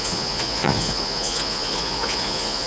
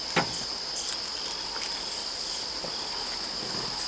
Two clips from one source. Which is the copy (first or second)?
first